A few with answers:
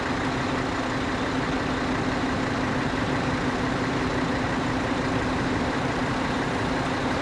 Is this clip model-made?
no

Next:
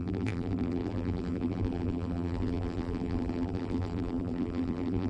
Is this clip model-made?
yes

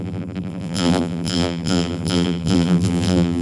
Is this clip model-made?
yes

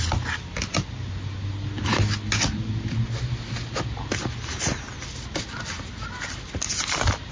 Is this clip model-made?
no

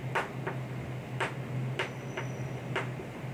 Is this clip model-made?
no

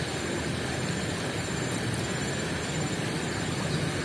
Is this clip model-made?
no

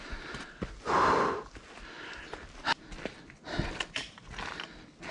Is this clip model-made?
no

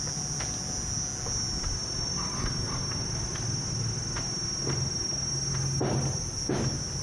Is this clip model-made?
no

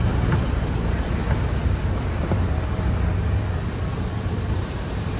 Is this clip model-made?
yes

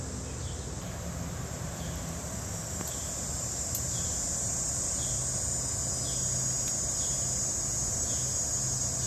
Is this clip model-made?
no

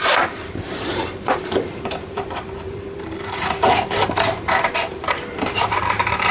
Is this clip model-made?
yes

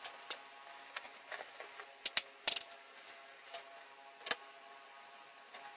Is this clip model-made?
no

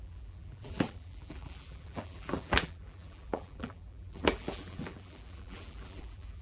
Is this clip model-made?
yes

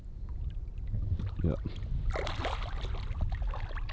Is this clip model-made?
no